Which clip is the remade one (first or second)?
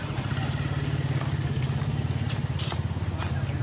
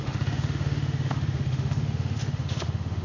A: second